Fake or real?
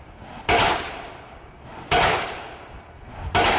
real